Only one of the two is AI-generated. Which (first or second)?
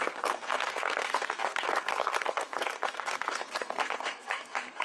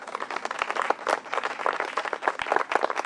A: first